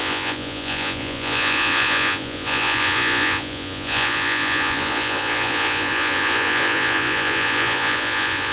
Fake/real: fake